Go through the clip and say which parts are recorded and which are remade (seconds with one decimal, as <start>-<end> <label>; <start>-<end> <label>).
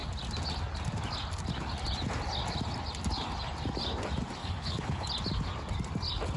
0.0-4.4 recorded; 4.4-5.1 remade; 5.1-6.4 recorded